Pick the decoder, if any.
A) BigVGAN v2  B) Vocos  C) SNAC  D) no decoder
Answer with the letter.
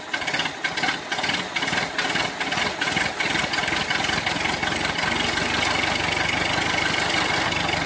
D